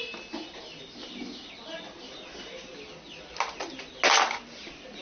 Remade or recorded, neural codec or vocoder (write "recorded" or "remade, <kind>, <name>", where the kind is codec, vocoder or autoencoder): recorded